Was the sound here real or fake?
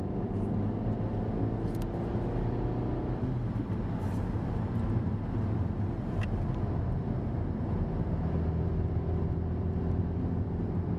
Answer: real